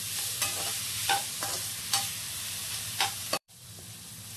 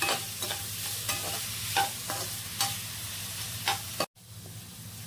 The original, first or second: second